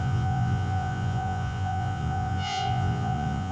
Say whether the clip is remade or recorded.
remade